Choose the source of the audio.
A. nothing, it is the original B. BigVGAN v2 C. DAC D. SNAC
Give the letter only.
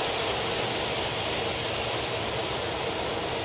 A